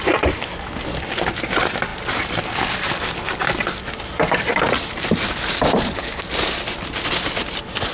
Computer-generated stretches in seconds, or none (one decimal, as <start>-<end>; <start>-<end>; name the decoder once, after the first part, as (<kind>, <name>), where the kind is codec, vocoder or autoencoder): 0.0-7.9 (vocoder, BigVGAN v2)